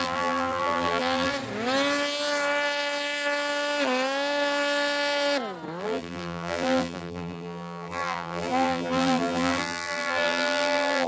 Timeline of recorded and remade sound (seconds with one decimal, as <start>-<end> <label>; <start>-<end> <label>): 0.0-1.3 remade; 1.3-5.8 recorded; 5.8-11.1 remade